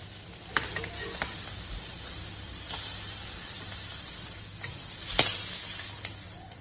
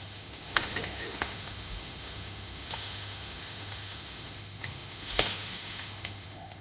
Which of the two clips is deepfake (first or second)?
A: second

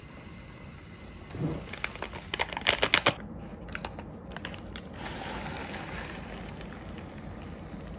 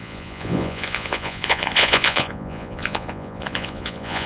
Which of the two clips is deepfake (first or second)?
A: second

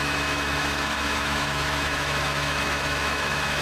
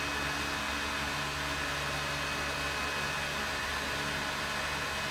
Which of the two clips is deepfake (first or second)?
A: first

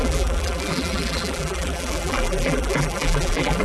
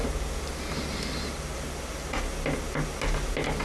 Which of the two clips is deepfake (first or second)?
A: first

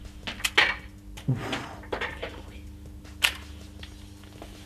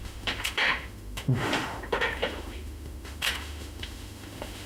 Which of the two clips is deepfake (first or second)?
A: second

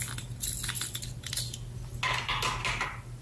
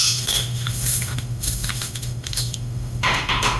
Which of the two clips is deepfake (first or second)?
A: second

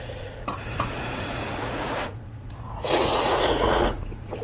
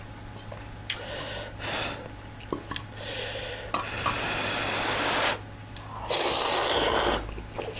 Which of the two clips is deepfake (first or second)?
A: first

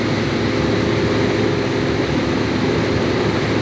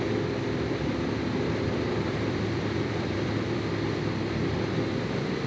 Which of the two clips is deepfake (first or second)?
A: second